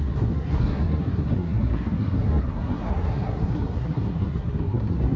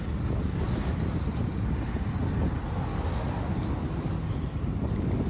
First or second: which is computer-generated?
first